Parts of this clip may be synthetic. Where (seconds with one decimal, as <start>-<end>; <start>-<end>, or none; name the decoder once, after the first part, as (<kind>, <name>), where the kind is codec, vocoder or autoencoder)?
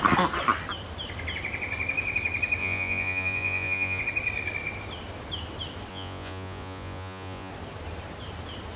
2.6-4.0 (vocoder, Vocos); 5.9-7.5